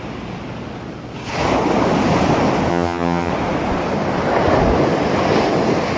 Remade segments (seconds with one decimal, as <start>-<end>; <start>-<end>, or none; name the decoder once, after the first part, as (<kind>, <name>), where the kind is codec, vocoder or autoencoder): 2.7-3.3 (vocoder, HiFi-GAN)